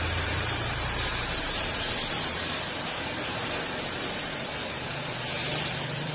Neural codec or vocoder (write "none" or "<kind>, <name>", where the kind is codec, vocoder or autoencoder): vocoder, BigVGAN v2